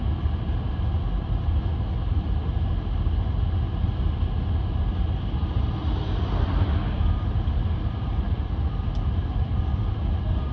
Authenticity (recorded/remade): recorded